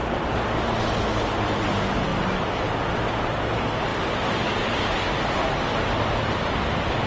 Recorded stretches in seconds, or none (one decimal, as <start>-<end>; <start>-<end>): 0.0-7.1